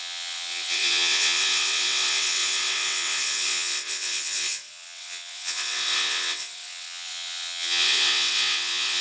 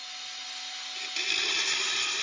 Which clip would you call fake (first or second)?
first